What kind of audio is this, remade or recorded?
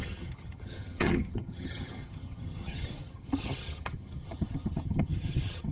remade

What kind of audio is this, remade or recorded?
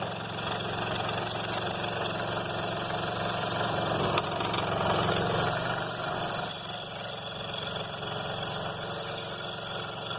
recorded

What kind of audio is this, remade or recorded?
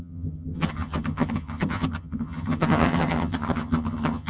remade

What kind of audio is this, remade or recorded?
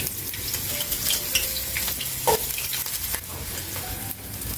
recorded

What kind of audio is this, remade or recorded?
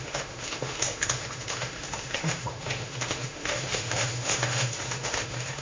remade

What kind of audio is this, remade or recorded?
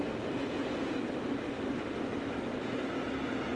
recorded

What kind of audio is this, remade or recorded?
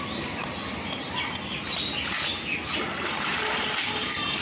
recorded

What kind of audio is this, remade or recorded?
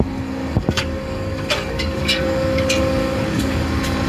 remade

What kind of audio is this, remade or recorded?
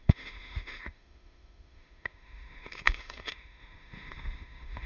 remade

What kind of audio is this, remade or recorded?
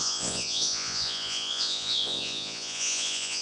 remade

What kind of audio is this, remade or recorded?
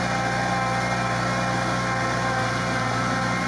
recorded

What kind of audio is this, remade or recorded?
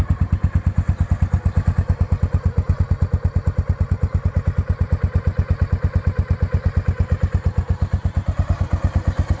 recorded